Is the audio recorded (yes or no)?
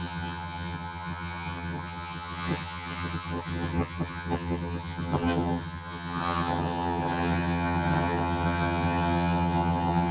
no